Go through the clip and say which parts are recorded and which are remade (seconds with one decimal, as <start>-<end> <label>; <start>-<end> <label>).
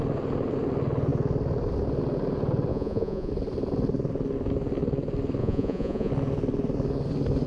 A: 0.0-2.7 recorded; 2.7-3.3 remade; 3.3-5.4 recorded; 5.4-6.1 remade; 6.1-7.5 recorded